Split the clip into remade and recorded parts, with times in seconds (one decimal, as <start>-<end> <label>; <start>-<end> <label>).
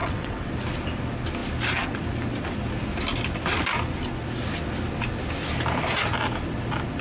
0.0-0.5 remade; 0.5-7.0 recorded